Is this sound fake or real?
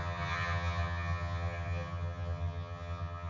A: fake